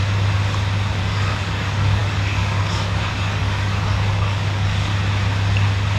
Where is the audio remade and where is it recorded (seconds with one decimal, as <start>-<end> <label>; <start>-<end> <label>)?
0.0-1.0 recorded; 1.0-4.9 remade; 4.9-6.0 recorded